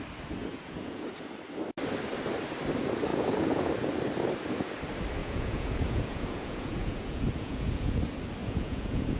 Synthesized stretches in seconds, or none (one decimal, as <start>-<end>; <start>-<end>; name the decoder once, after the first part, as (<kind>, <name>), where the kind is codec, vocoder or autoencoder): 0.4-1.3 (vocoder, Vocos); 3.1-3.7; 5.2-8.0; 8.4-9.2